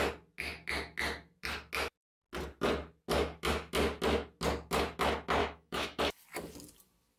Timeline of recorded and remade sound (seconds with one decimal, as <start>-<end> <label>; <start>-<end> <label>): 0.0-5.4 recorded; 5.4-6.0 remade; 6.0-7.2 recorded